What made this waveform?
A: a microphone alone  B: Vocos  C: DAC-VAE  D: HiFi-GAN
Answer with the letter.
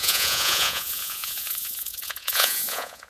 B